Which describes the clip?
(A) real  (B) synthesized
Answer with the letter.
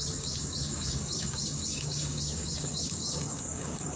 B